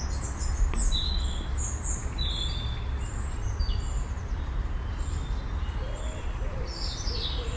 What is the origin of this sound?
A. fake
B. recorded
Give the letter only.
B